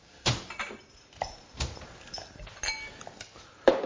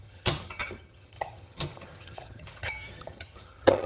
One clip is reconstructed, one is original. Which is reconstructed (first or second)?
second